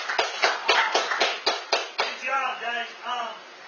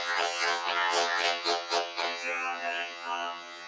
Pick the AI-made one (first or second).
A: second